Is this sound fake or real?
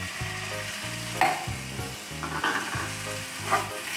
real